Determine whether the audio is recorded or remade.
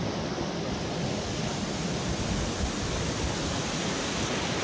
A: recorded